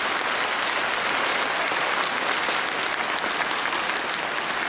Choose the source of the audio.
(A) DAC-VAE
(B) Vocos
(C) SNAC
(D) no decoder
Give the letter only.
D